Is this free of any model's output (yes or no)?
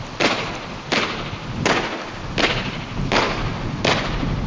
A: yes